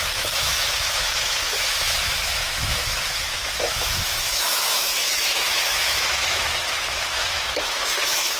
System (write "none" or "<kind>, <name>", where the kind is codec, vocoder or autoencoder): autoencoder, DAC-VAE